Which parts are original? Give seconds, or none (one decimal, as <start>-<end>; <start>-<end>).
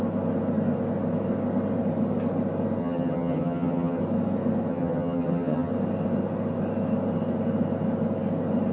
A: 0.0-2.8; 4.0-4.7; 5.7-8.7